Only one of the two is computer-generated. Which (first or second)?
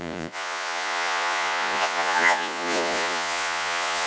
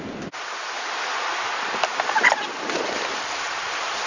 first